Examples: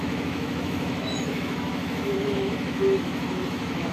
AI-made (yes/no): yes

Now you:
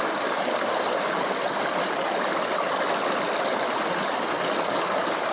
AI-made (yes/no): no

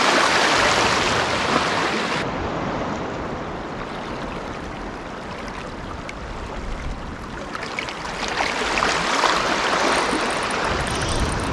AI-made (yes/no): no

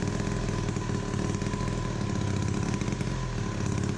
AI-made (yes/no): no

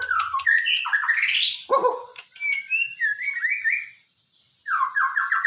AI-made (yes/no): no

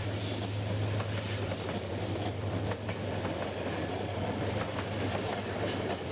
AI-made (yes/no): no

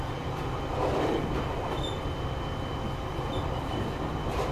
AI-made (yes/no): no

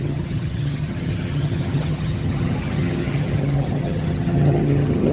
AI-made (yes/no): yes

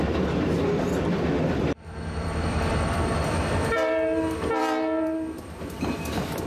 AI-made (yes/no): yes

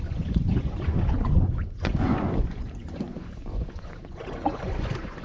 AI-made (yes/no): yes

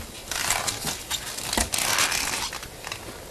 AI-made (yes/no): yes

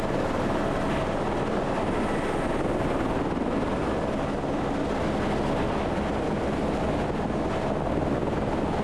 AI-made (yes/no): no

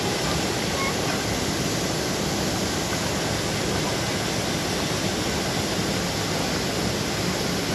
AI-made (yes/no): no